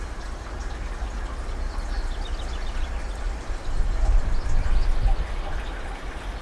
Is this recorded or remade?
recorded